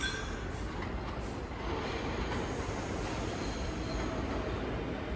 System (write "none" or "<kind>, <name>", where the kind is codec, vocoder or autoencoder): none